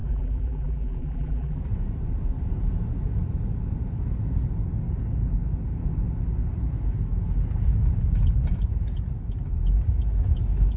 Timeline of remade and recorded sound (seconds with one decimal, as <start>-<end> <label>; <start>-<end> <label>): 0.0-1.6 remade; 1.6-10.8 recorded